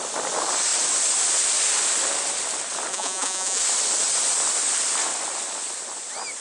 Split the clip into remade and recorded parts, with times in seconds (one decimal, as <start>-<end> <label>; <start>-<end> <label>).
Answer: 0.0-2.9 recorded; 2.9-3.6 remade; 3.6-6.4 recorded